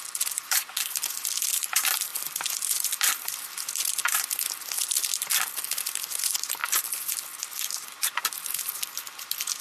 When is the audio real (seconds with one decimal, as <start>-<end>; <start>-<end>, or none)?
0.0-6.6; 8.5-9.6

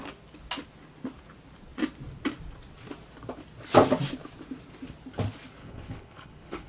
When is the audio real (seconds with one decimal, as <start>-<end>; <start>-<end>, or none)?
0.0-5.6

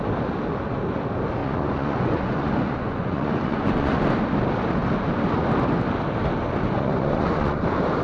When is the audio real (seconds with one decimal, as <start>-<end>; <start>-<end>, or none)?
0.0-1.4; 4.0-6.7; 7.6-8.0